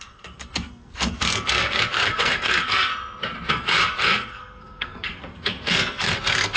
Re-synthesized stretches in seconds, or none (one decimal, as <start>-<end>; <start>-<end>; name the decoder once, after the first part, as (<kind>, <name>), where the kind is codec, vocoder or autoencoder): 0.0-2.9 (codec, SNAC); 3.5-6.6